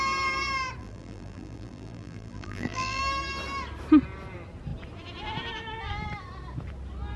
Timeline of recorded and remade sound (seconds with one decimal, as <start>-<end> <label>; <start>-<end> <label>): 0.0-0.8 recorded; 0.8-3.0 remade; 3.0-7.2 recorded